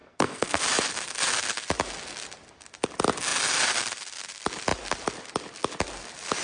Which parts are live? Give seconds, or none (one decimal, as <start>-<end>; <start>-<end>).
0.6-6.4